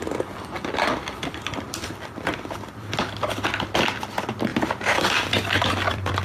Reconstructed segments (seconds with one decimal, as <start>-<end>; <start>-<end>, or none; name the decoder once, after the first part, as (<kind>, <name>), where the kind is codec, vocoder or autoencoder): 1.2-3.3 (vocoder, BigVGAN v2); 4.5-6.2